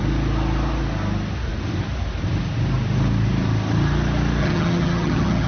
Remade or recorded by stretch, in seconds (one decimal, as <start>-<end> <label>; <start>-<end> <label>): 0.0-4.4 recorded; 4.4-5.5 remade